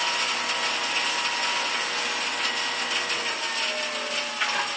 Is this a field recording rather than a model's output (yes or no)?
yes